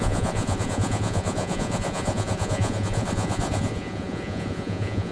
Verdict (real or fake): fake